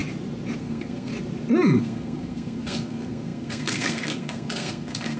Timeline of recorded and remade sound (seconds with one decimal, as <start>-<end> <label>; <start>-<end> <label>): 0.0-0.6 recorded; 0.6-1.1 remade; 1.1-1.8 recorded; 1.8-5.2 remade